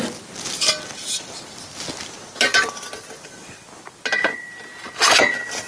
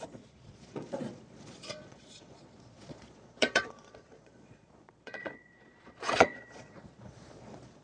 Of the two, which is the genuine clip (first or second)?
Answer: first